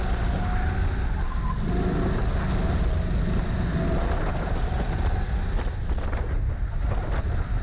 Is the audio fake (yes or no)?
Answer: no